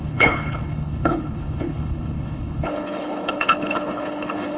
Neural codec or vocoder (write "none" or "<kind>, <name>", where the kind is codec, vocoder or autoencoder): codec, HILCodec